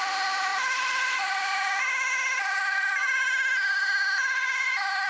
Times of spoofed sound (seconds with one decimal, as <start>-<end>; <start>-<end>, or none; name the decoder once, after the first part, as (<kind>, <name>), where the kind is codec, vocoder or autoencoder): 0.0-0.5 (vocoder, BigVGAN v2); 2.4-3.0; 4.2-5.1